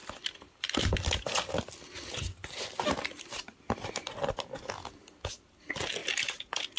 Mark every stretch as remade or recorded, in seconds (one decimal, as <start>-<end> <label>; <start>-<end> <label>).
0.0-6.8 recorded